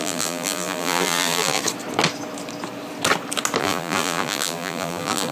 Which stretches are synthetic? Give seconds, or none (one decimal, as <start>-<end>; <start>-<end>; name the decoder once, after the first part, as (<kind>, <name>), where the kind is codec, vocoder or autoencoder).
0.0-1.6 (vocoder, BigVGAN v2); 3.6-5.3